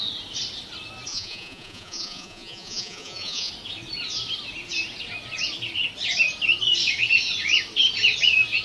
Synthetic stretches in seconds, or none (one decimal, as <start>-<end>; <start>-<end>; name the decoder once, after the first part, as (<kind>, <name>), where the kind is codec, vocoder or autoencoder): 1.1-3.5 (vocoder, Vocos)